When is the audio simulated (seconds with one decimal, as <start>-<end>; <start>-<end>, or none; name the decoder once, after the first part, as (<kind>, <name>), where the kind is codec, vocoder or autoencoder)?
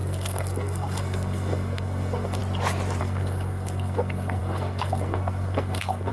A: 0.0-2.4 (codec, SNAC); 3.0-6.1